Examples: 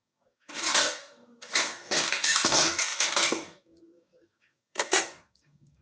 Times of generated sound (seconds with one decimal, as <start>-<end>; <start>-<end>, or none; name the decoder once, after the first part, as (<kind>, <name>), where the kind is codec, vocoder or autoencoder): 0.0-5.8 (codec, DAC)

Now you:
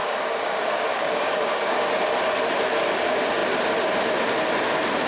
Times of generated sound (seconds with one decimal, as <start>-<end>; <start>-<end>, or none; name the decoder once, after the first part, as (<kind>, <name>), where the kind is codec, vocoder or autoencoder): 0.0-1.9 (codec, DAC)

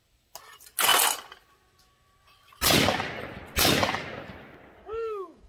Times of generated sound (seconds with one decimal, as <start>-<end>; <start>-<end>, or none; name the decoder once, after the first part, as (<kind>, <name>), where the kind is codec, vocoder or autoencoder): 4.8-5.5 (codec, DAC)